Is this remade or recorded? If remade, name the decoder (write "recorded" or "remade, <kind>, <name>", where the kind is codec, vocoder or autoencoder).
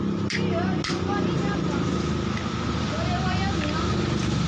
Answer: recorded